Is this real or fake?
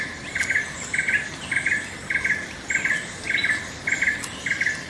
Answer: real